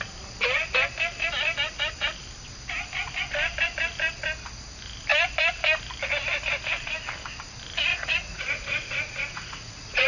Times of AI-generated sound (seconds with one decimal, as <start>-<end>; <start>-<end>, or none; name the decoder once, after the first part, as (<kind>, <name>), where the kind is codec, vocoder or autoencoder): 7.9-10.1 (vocoder, Vocos)